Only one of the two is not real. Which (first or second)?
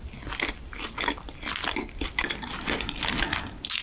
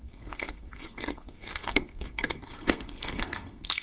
second